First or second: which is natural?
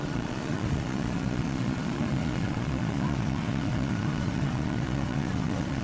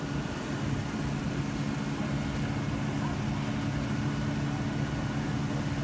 second